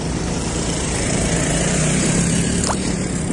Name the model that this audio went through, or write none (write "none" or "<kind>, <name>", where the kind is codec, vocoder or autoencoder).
vocoder, BigVGAN v2